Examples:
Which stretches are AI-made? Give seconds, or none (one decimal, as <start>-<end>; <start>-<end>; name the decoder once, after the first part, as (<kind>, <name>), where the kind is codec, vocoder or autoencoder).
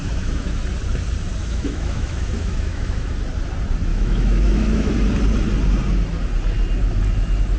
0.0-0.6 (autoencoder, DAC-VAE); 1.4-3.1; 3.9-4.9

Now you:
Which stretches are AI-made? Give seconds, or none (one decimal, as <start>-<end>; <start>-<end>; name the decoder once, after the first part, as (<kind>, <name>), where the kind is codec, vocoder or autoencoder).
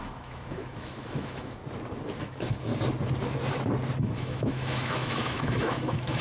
0.0-1.6 (autoencoder, DAC-VAE); 2.2-2.7; 4.0-6.2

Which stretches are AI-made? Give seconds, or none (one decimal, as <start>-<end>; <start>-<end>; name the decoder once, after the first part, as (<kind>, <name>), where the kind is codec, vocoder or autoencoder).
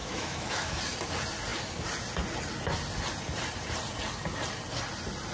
0.0-0.8 (autoencoder, DAC-VAE)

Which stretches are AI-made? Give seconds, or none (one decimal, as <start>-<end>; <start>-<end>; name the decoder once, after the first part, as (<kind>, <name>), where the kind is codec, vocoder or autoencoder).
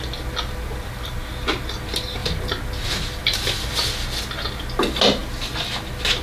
none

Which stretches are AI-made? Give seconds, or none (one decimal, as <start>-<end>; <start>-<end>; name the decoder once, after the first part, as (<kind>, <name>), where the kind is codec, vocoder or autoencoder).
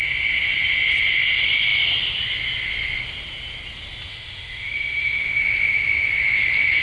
4.1-5.4 (autoencoder, DAC-VAE)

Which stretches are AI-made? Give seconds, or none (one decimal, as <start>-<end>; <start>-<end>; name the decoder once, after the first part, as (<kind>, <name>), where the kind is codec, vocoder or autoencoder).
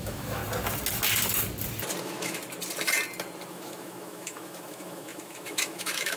0.0-0.4 (autoencoder, DAC-VAE); 2.0-2.4; 3.5-6.2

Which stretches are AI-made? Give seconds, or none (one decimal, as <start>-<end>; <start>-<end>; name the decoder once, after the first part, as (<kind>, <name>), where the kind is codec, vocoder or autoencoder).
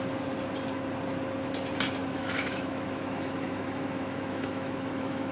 2.0-5.3 (autoencoder, DAC-VAE)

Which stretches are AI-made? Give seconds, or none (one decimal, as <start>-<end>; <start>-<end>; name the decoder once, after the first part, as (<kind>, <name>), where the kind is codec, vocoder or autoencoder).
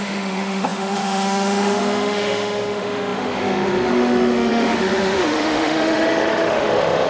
0.0-7.1 (autoencoder, DAC-VAE)